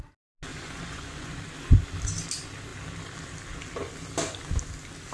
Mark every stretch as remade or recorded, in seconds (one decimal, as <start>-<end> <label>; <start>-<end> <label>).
0.0-0.5 recorded; 0.5-1.4 remade; 1.4-5.1 recorded